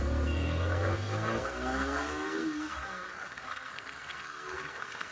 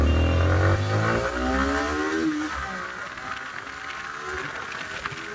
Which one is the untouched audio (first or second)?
second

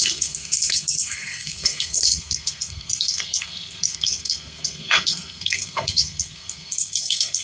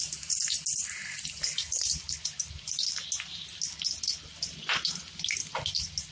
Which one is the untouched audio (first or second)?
second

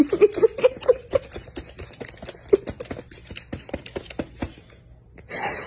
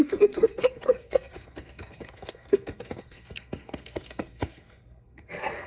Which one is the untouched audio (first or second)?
first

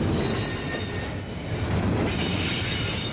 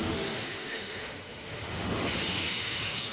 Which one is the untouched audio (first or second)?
first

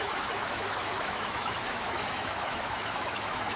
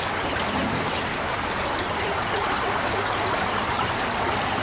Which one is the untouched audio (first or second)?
second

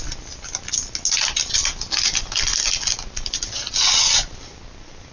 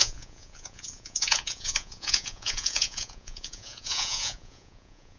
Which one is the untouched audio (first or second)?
first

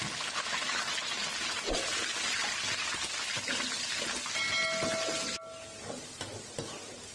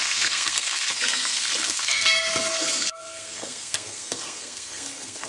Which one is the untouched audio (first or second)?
first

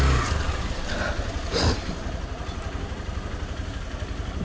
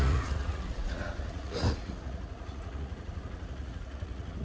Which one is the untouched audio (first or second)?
first